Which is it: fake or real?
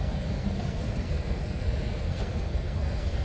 fake